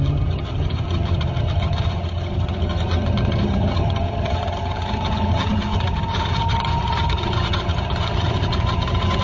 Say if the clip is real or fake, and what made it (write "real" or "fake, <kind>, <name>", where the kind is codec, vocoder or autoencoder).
fake, vocoder, HiFi-GAN